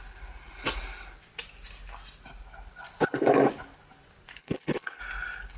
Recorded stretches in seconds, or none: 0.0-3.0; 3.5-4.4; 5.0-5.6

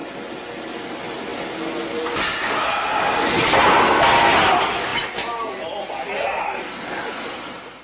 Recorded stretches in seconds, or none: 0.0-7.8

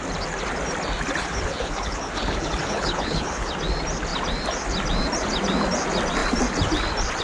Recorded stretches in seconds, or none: 0.0-1.2; 3.5-7.2